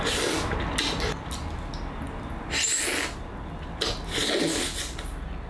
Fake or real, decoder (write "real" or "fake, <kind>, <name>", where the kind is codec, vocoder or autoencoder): real